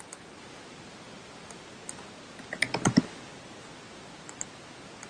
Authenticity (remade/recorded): recorded